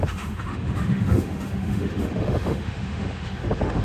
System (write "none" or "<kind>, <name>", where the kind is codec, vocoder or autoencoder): autoencoder, DAC-VAE